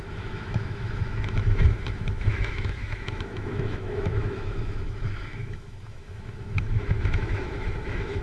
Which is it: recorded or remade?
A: remade